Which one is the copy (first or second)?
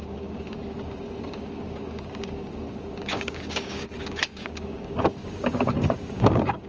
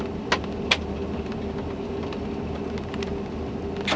first